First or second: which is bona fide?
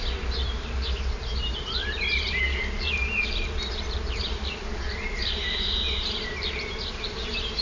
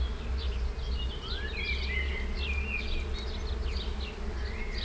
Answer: second